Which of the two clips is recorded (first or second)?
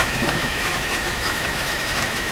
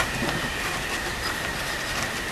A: second